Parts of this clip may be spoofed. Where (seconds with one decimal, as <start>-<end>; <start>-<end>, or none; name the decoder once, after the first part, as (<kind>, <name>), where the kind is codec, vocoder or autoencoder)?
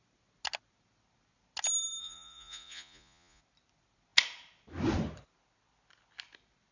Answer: 2.0-3.4 (vocoder, Vocos)